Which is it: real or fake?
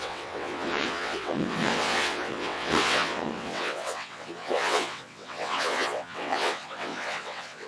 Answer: fake